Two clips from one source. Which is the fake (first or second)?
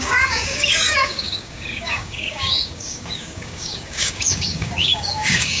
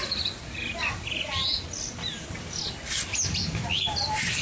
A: first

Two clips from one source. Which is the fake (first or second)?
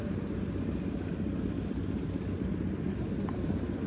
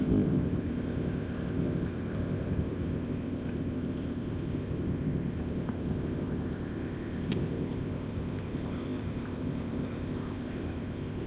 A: second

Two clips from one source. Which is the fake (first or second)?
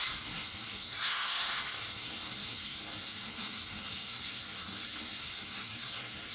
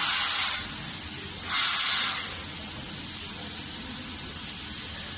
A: first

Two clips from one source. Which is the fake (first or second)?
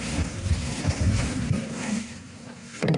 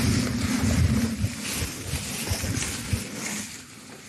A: first